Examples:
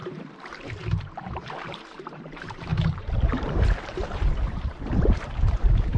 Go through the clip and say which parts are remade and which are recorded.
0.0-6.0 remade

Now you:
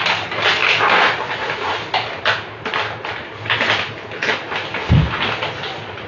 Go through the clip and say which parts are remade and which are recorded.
0.0-6.1 recorded

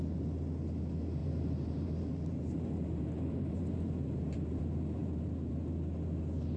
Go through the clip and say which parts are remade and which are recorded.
0.0-1.2 recorded; 1.2-4.6 remade; 4.6-5.0 recorded; 5.0-5.5 remade; 5.5-6.6 recorded

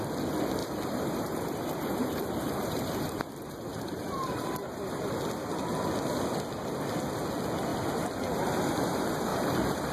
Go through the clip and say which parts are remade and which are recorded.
0.0-0.6 recorded; 0.6-5.1 remade; 5.1-9.3 recorded; 9.3-9.9 remade

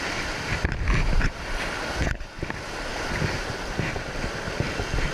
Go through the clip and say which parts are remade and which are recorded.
0.0-5.1 recorded

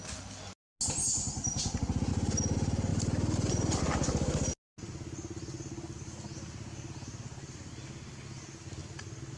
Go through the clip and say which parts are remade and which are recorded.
0.0-2.9 recorded; 2.9-3.8 remade; 3.8-9.4 recorded

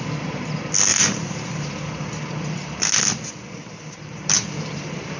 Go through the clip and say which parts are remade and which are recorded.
0.0-0.9 recorded; 0.9-1.7 remade; 1.7-3.6 recorded; 3.6-5.2 remade

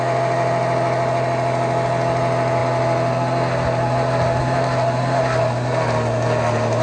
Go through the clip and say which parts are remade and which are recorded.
0.0-6.8 recorded